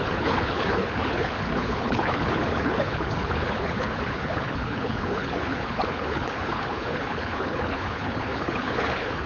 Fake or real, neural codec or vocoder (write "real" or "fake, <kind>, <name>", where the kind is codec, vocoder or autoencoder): fake, codec, HILCodec